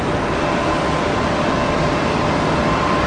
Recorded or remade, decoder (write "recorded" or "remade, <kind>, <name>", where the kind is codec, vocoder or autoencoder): recorded